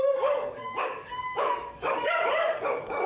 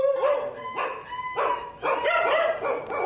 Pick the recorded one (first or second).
second